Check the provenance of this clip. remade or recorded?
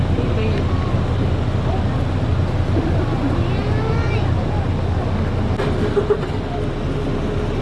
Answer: recorded